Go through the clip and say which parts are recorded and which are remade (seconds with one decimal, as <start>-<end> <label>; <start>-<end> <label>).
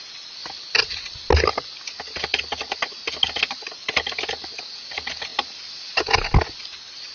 0.0-7.1 recorded